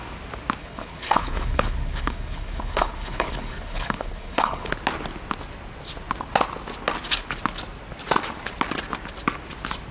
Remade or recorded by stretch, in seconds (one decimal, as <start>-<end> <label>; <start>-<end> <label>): 0.0-0.6 recorded; 0.6-4.7 remade; 4.7-9.9 recorded